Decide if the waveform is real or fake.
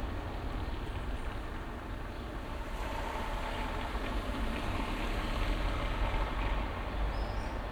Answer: real